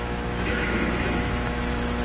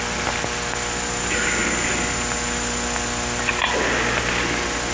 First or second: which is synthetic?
first